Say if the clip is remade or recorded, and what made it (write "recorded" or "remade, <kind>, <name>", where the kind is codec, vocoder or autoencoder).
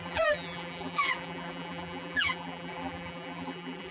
remade, vocoder, BigVGAN v2